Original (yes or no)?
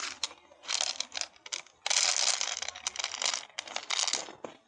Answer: yes